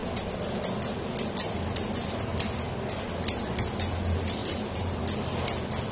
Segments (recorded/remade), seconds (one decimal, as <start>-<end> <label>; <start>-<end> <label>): 0.0-4.4 recorded; 4.4-5.0 remade; 5.0-5.9 recorded